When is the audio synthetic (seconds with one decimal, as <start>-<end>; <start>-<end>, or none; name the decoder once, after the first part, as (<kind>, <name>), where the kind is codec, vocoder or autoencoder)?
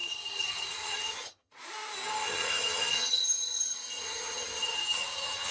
0.0-1.5 (vocoder, HiFi-GAN); 2.2-5.5